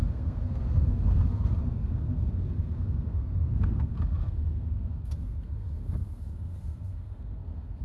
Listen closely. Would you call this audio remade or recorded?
remade